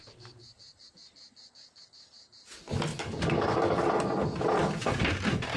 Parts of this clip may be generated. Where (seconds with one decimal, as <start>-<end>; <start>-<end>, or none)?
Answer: 2.9-3.9